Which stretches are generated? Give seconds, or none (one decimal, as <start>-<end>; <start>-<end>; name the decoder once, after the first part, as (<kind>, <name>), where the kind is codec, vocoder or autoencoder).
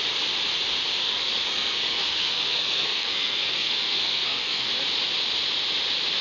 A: 1.0-4.7 (codec, SNAC)